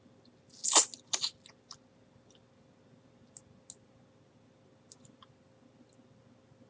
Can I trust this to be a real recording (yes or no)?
yes